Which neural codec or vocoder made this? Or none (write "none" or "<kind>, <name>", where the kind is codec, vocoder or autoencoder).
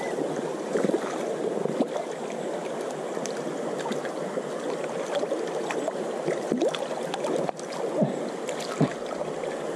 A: none